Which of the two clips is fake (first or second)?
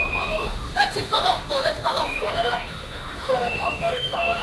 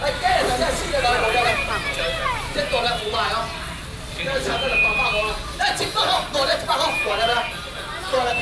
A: first